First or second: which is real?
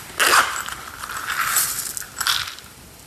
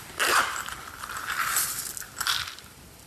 first